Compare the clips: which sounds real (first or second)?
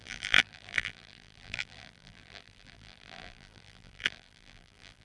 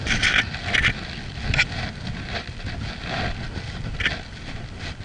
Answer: second